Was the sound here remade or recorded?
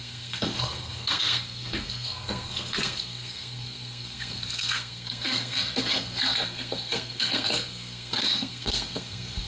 remade